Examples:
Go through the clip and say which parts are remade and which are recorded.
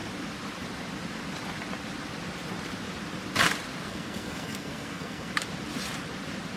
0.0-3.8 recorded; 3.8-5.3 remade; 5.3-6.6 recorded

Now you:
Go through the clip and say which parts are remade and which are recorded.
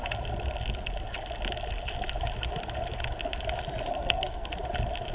0.0-3.9 recorded; 3.9-4.5 remade; 4.5-5.1 recorded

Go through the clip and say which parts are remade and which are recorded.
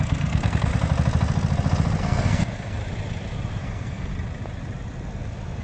0.0-0.7 remade; 0.7-2.0 recorded; 2.0-2.8 remade; 2.8-3.6 recorded; 3.6-4.1 remade; 4.1-5.6 recorded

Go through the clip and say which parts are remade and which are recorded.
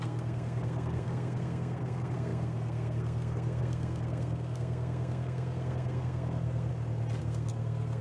0.0-6.7 remade; 6.7-7.2 recorded; 7.2-8.0 remade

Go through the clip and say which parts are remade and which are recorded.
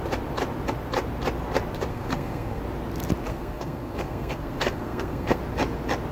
0.0-1.9 recorded; 1.9-2.6 remade; 2.6-3.3 recorded; 3.3-5.4 remade; 5.4-6.1 recorded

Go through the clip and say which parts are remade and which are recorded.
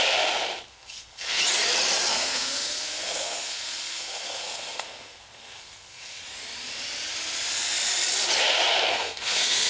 0.0-0.7 recorded; 0.7-1.4 remade; 1.4-2.1 recorded; 2.1-6.2 remade; 6.2-8.9 recorded; 8.9-9.7 remade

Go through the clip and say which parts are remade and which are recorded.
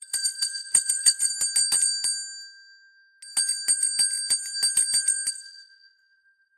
0.0-1.3 remade; 1.3-5.3 recorded; 5.3-6.6 remade